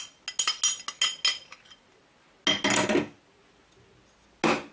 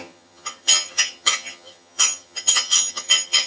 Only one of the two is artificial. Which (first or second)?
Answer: second